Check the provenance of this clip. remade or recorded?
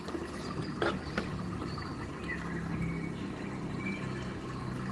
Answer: recorded